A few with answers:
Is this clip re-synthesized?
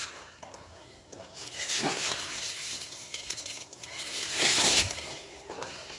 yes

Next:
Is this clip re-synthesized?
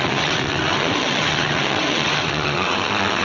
yes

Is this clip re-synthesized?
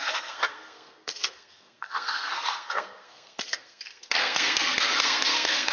yes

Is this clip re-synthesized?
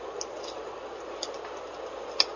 no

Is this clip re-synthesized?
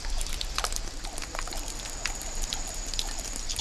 yes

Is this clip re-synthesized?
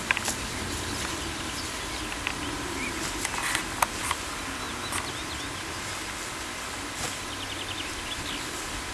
no